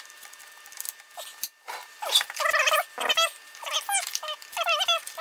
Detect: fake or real real